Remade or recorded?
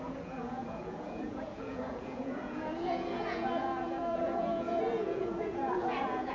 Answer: remade